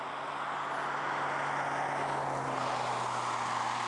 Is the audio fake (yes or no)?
no